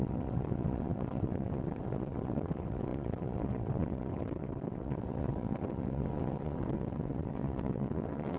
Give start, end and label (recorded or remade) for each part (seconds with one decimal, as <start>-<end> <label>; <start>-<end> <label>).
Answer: 0.0-8.4 remade